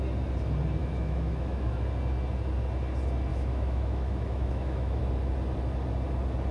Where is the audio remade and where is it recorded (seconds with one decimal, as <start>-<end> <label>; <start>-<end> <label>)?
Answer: 0.0-0.8 recorded; 0.8-1.8 remade; 1.8-3.3 recorded; 3.3-5.0 remade; 5.0-6.5 recorded